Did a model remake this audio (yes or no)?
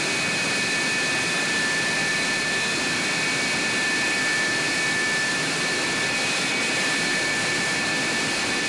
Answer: no